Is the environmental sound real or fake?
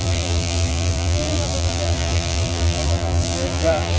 fake